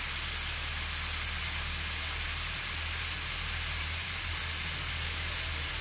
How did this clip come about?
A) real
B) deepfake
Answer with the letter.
A